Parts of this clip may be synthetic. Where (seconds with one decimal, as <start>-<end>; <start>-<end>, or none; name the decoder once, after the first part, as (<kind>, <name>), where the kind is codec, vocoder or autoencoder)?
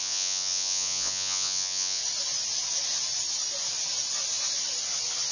0.0-2.0 (vocoder, Vocos)